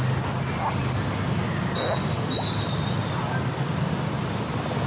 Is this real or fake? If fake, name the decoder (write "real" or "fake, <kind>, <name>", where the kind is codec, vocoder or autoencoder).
real